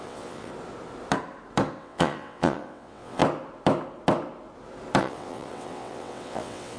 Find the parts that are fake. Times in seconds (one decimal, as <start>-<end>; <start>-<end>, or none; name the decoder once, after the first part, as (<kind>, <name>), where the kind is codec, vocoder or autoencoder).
0.0-0.5 (vocoder, WaveNeXt); 1.8-3.2; 5.0-6.8